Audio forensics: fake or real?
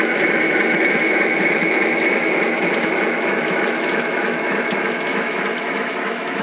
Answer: fake